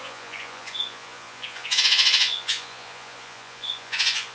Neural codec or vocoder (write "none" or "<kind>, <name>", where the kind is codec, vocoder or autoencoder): vocoder, Vocos